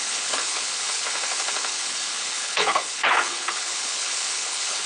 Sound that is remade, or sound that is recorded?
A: remade